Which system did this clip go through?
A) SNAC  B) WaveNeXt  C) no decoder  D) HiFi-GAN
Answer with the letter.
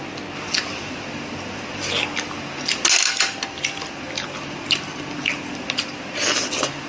C